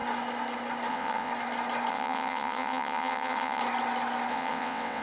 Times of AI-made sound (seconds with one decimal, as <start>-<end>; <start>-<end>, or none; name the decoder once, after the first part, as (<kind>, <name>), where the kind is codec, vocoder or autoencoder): 0.9-1.3 (vocoder, WaveNeXt); 1.9-3.6; 4.3-5.0